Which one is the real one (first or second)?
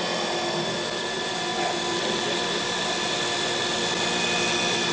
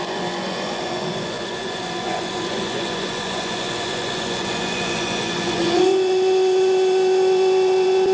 first